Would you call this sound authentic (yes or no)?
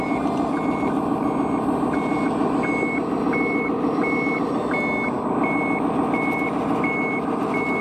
yes